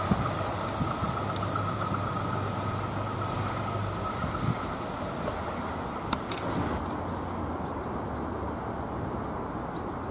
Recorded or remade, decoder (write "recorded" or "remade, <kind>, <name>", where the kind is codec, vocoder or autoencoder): recorded